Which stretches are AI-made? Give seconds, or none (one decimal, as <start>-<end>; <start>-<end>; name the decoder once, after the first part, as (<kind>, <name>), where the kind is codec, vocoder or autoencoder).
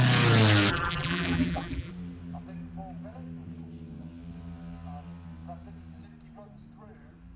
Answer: 0.7-1.9 (vocoder, BigVGAN v2)